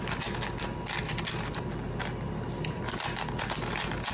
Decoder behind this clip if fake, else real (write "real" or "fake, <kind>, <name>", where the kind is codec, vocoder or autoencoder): real